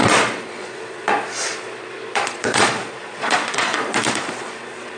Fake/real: fake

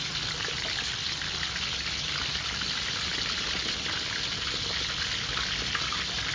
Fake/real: real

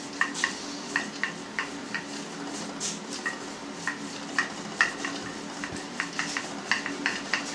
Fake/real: real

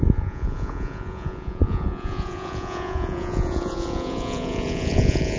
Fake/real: fake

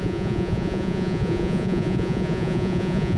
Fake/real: fake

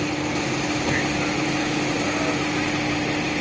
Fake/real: real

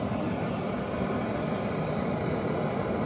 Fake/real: real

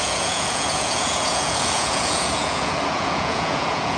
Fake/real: fake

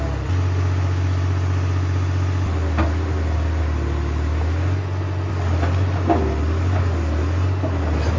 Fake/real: real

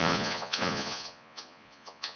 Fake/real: fake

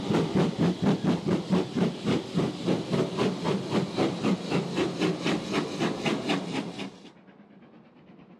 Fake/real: real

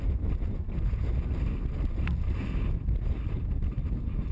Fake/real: real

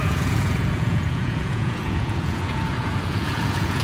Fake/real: fake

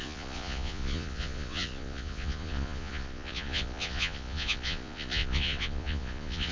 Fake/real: fake